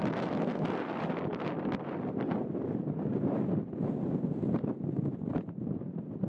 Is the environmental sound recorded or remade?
recorded